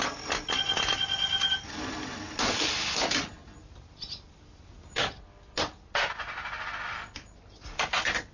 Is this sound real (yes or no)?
yes